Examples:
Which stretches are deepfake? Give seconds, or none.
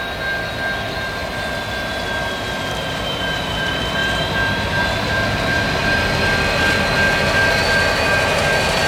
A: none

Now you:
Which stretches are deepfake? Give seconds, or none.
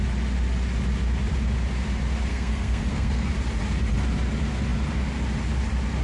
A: 2.3-3.3 (codec, SNAC)